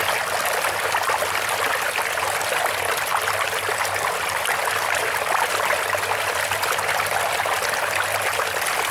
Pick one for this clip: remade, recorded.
recorded